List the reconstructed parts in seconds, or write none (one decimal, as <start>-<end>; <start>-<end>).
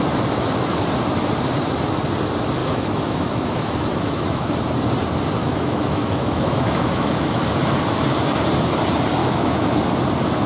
2.6-4.6; 5.4-7.4; 9.2-9.8